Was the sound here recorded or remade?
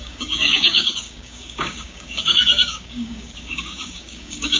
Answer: remade